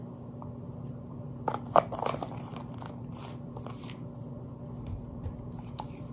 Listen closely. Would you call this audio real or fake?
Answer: real